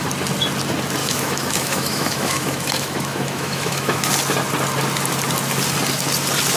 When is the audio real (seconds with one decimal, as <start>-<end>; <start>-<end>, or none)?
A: 0.0-1.0; 4.1-6.6